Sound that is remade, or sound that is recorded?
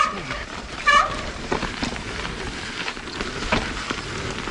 recorded